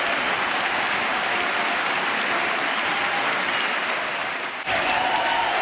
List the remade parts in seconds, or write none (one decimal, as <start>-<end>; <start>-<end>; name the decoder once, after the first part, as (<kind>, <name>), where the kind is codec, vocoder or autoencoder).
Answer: 1.1-2.9 (vocoder, BigVGAN v2); 4.2-5.1